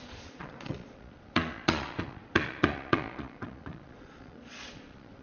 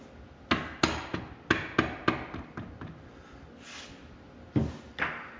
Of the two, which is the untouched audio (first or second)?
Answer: second